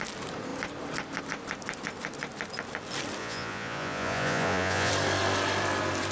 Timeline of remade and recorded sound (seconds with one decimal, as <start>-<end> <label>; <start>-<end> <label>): 0.0-3.2 recorded; 3.2-4.9 remade; 4.9-6.1 recorded